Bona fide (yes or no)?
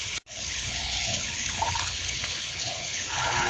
no